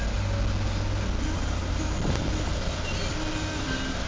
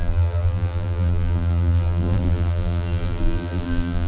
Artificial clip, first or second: second